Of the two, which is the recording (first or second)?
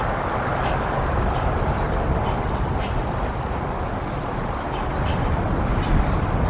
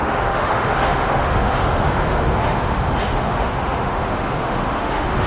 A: first